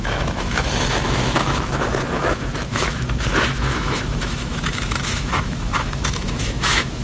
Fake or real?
fake